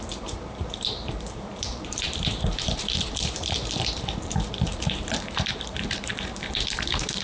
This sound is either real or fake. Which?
fake